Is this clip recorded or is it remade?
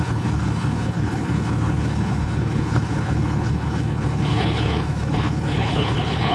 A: remade